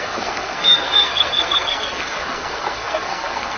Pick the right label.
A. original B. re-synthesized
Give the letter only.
B